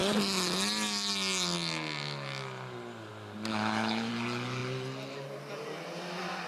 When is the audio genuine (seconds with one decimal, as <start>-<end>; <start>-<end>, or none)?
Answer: 0.0-3.5; 4.1-6.5